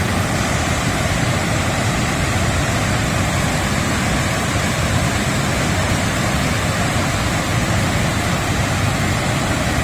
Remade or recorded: recorded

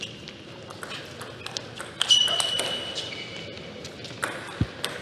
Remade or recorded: recorded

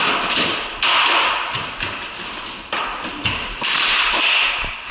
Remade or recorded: recorded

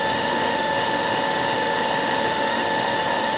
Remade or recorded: remade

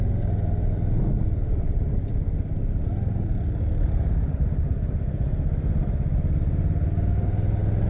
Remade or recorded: recorded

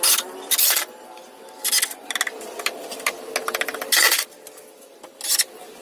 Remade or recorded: recorded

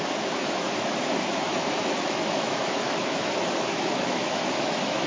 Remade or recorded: remade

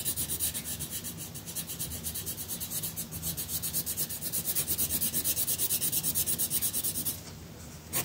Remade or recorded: recorded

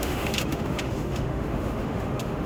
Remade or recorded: remade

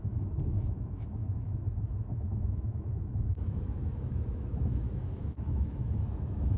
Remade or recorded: remade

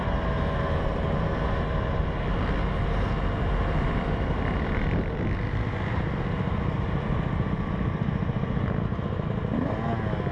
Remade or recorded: recorded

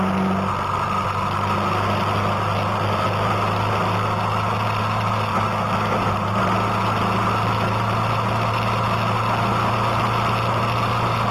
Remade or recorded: recorded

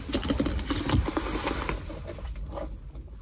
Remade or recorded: recorded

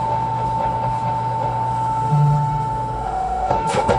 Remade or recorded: remade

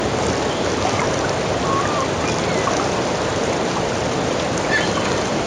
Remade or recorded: recorded